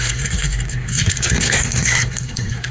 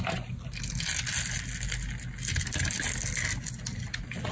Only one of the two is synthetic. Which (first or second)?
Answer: first